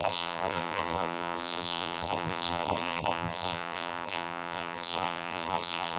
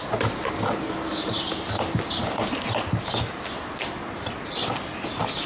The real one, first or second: second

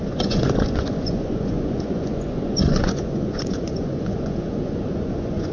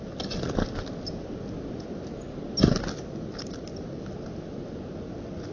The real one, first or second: second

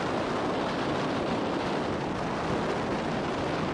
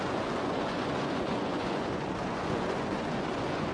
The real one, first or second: first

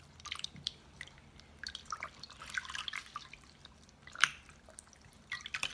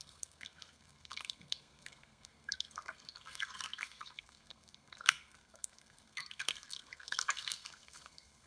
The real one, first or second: first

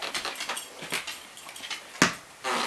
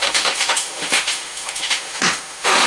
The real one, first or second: first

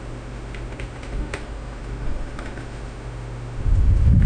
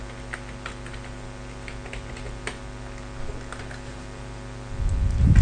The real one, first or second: second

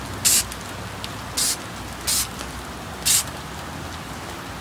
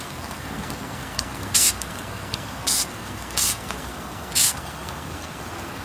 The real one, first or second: first